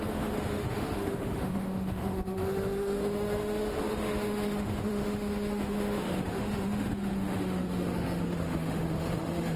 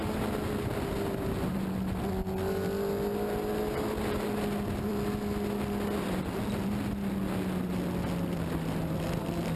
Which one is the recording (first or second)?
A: second